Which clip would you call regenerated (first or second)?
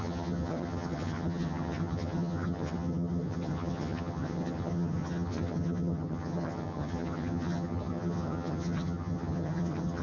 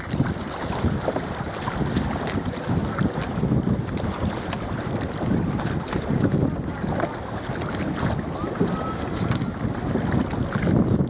first